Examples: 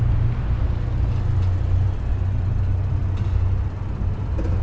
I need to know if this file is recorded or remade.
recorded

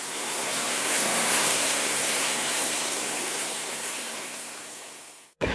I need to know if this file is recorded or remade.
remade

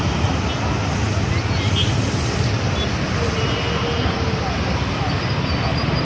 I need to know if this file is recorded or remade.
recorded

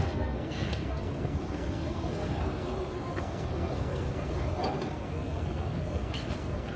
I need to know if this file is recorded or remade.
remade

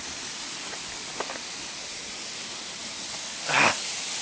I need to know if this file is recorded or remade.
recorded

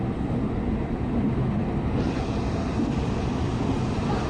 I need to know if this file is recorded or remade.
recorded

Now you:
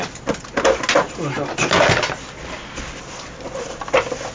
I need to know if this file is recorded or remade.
recorded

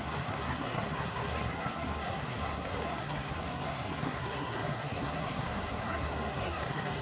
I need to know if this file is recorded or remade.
remade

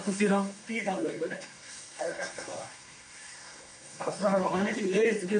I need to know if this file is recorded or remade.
remade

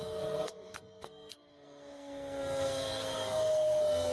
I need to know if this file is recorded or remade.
remade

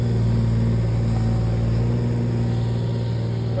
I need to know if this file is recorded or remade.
recorded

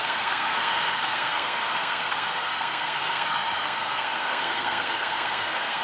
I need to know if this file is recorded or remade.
remade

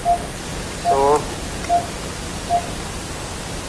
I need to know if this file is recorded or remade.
recorded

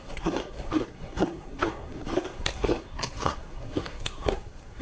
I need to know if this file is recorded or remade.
remade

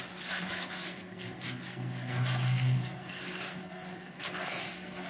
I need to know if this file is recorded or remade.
remade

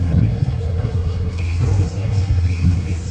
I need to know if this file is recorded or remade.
remade